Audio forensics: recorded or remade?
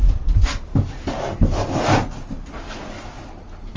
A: recorded